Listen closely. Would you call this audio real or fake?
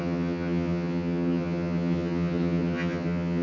fake